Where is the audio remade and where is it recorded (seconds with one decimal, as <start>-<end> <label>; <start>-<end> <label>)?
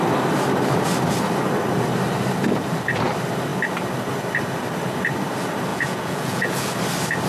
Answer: 0.0-5.7 recorded; 5.7-6.7 remade; 6.7-7.3 recorded